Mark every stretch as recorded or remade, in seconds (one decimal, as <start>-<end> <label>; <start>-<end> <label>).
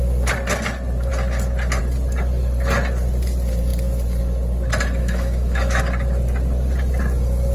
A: 0.0-5.0 recorded; 5.0-5.8 remade; 5.8-7.5 recorded